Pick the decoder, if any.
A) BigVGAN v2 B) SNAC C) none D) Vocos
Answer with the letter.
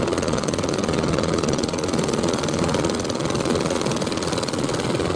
D